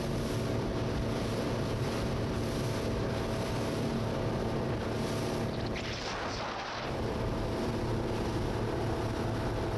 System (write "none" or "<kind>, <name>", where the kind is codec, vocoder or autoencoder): none